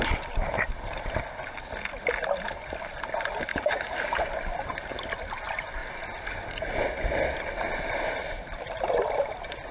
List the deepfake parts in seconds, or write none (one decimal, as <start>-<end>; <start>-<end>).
3.5-4.3